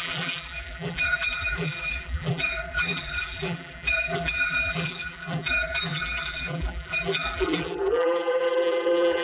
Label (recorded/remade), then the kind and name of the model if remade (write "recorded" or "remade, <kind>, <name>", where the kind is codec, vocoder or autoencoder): remade, vocoder, BigVGAN v2